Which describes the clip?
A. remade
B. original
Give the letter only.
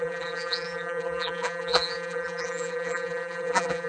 A